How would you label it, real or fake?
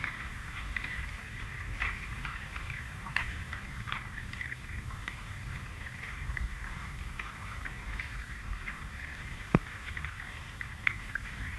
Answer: fake